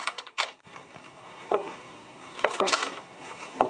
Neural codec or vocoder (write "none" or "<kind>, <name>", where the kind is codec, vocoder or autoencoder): codec, SNAC